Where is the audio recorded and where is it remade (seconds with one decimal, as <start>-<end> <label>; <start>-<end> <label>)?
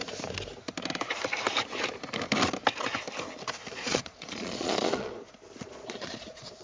0.0-3.7 recorded; 3.7-5.1 remade; 5.1-5.6 recorded; 5.6-6.6 remade